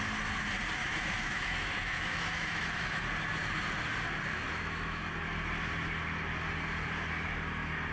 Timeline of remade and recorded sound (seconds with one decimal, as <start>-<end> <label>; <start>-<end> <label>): 0.0-0.8 recorded; 0.8-3.0 remade; 3.0-4.3 recorded; 4.3-5.0 remade; 5.0-7.9 recorded